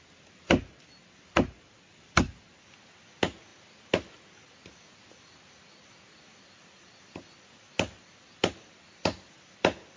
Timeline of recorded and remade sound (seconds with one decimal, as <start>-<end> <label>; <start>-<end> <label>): 0.0-10.0 recorded